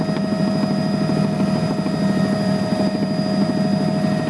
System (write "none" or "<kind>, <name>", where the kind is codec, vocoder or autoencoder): none